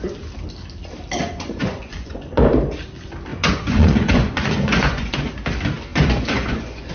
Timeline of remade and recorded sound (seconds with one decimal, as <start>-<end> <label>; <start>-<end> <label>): 0.0-1.2 recorded; 1.2-2.4 remade; 2.4-3.3 recorded; 3.3-5.4 remade; 5.4-5.9 recorded; 5.9-6.9 remade